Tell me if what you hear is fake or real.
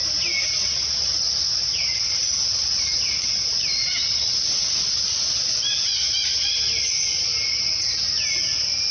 real